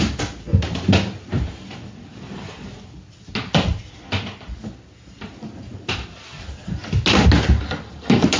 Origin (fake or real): real